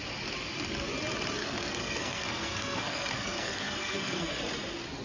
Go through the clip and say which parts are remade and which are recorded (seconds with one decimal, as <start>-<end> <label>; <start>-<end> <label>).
0.0-1.4 recorded; 1.4-4.4 remade; 4.4-5.0 recorded